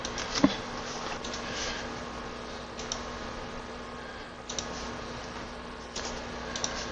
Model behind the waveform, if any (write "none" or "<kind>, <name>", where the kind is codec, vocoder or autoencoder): none